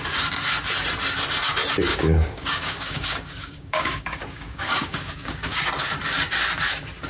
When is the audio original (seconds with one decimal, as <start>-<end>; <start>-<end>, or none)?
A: 0.0-1.9; 5.7-7.1